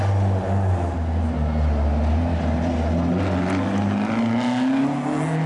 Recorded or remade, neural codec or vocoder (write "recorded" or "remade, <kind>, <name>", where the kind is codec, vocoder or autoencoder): recorded